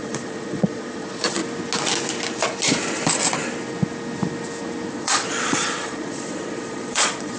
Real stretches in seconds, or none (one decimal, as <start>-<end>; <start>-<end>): 1.4-4.9